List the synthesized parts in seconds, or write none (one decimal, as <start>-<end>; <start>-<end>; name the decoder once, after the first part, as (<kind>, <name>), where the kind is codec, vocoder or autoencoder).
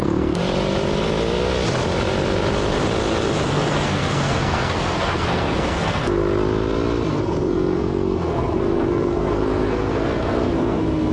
0.0-0.4 (codec, SNAC); 3.5-6.2; 7.1-11.1